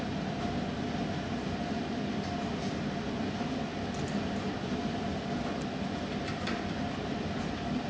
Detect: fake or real real